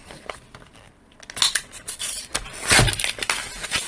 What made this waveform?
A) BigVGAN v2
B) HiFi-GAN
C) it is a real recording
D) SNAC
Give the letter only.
C